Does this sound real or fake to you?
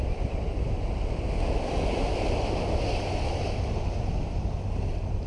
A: real